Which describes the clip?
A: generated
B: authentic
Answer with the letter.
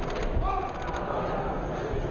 B